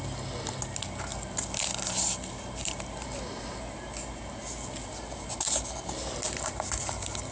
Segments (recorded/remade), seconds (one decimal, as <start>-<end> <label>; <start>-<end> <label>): 0.0-7.3 recorded